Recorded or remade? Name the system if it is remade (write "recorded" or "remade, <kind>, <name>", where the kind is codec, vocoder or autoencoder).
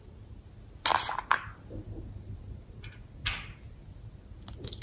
recorded